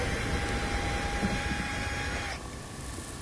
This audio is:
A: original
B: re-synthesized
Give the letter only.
A